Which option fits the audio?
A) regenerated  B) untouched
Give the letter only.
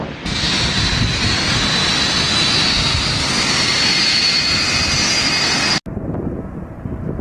B